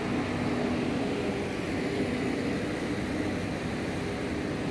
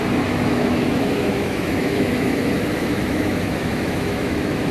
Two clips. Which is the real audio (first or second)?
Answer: first